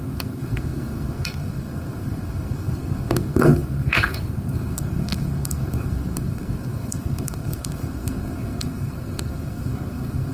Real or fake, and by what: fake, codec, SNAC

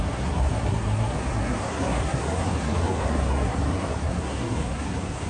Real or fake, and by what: fake, codec, SNAC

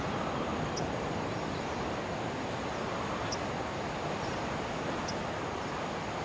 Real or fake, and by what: real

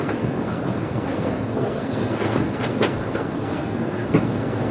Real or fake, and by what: fake, codec, SNAC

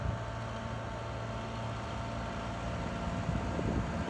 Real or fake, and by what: real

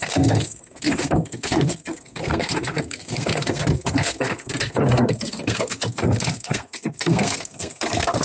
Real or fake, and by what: fake, codec, SNAC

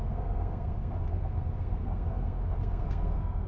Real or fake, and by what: fake, codec, SNAC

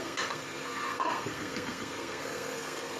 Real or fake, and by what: fake, codec, SNAC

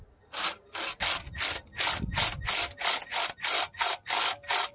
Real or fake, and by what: real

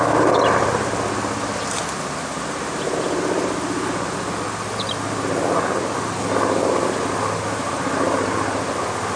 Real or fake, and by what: real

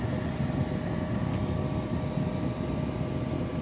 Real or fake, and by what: real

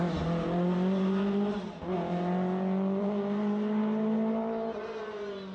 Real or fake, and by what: real